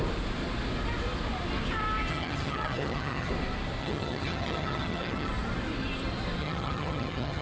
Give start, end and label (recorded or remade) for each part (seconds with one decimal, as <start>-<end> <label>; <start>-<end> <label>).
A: 0.0-2.1 recorded; 2.1-3.3 remade; 3.3-3.8 recorded; 3.8-5.3 remade; 5.3-6.4 recorded; 6.4-7.4 remade